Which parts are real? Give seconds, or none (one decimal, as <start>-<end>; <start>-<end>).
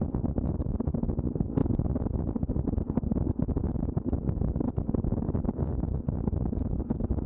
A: 0.0-7.3